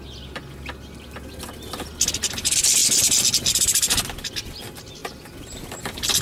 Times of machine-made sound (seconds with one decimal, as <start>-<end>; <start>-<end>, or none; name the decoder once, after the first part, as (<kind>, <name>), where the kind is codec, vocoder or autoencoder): none